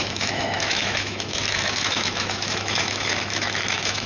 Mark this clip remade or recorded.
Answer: remade